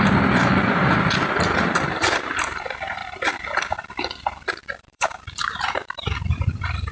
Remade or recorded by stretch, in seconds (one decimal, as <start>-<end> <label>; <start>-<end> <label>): 0.0-6.9 remade